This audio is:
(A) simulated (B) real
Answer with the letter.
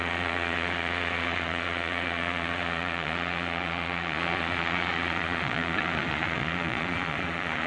A